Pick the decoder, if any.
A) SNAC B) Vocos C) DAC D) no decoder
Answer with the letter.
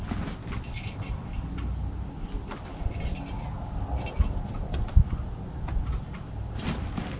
D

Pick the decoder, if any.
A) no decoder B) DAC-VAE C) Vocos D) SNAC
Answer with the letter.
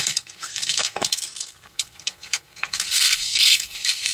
D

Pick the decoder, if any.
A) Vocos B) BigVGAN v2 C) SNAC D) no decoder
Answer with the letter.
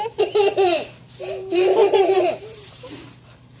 B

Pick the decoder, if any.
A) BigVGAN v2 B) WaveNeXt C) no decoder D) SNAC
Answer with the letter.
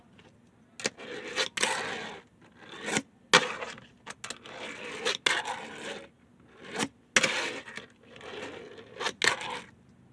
C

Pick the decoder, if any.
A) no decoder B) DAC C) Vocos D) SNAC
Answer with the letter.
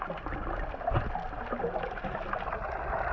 A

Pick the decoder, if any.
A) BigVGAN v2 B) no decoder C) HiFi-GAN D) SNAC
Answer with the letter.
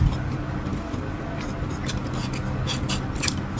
B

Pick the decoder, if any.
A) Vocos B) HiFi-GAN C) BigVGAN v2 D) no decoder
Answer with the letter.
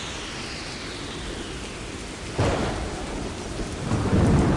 D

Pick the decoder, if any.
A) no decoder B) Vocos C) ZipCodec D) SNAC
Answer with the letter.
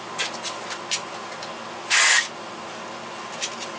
A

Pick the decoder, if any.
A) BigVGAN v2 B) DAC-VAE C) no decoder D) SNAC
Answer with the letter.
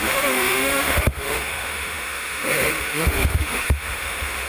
B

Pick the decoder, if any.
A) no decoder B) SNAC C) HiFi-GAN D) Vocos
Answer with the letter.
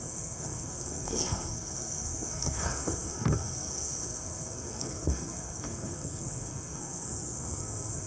B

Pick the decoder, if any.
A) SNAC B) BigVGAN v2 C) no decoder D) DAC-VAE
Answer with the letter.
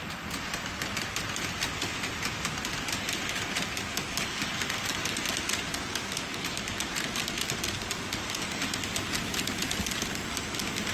C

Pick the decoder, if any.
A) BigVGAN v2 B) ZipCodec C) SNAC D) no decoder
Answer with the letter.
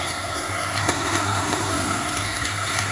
C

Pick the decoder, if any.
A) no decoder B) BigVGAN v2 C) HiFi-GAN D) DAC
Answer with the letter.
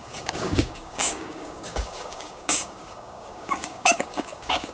D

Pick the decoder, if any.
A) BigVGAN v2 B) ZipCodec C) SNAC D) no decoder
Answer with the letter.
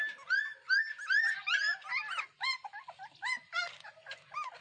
D